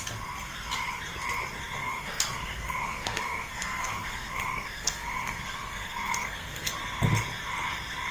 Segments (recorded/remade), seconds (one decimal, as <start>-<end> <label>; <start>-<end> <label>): 0.0-1.8 recorded; 1.8-6.7 remade; 6.7-8.1 recorded